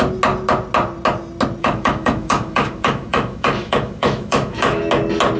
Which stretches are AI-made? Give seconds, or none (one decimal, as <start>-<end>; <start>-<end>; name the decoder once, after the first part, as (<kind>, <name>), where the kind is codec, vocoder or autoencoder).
1.6-4.8 (autoencoder, DAC-VAE)